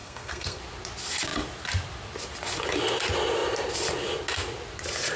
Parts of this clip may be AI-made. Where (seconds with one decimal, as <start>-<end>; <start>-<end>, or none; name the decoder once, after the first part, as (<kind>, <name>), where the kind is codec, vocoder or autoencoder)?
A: 0.0-0.6 (codec, SNAC)